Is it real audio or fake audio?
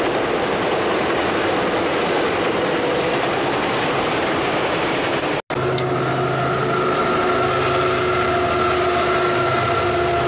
real